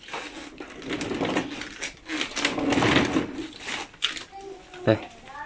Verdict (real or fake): real